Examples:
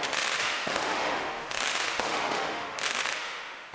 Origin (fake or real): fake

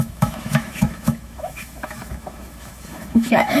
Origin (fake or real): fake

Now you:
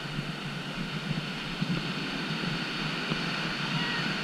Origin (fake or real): real